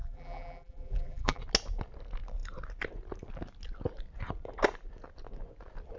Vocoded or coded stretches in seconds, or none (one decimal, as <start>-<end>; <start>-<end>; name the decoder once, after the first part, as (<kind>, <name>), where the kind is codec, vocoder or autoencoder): 0.0-1.4 (vocoder, BigVGAN v2)